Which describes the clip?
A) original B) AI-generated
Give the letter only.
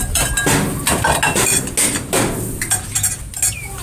A